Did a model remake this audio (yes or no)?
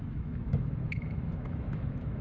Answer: yes